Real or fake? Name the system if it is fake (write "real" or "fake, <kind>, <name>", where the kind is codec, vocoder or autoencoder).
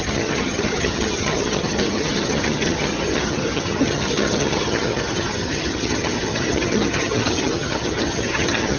fake, vocoder, HiFi-GAN